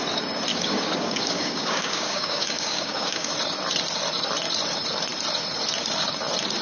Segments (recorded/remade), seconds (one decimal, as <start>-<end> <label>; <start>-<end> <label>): 0.0-0.5 recorded; 0.5-3.3 remade; 3.3-6.6 recorded